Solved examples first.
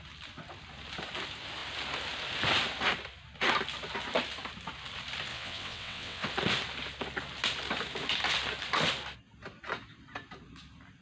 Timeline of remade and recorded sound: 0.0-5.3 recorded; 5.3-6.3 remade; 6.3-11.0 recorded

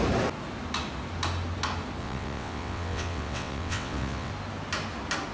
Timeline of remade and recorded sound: 0.0-2.0 recorded; 2.0-4.3 remade; 4.3-5.3 recorded

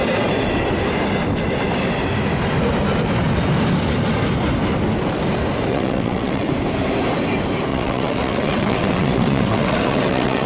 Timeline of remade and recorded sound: 0.0-5.7 recorded; 5.7-6.5 remade; 6.5-7.7 recorded; 7.7-10.5 remade

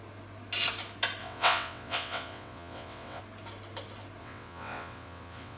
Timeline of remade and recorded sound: 0.0-1.2 recorded; 1.2-3.2 remade; 3.2-4.2 recorded; 4.2-5.6 remade

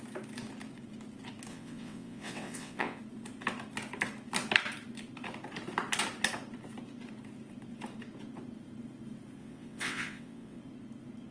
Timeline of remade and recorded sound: 0.0-1.5 recorded; 1.5-3.0 remade; 3.0-9.4 recorded; 9.4-10.6 remade; 10.6-11.3 recorded

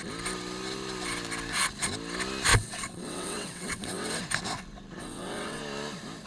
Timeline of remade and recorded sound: 0.0-2.5 recorded; 2.5-4.2 remade; 4.2-5.0 recorded; 5.0-5.6 remade; 5.6-6.3 recorded